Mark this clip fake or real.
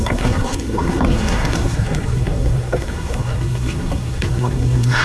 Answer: fake